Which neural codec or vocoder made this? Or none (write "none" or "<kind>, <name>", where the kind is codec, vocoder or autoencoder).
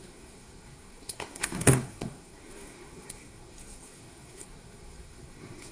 codec, SNAC